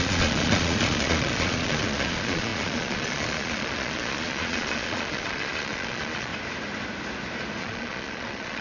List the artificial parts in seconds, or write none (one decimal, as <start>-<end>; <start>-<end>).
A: 0.0-6.3; 7.6-8.6